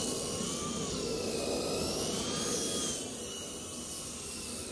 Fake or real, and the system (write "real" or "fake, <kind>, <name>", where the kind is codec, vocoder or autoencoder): real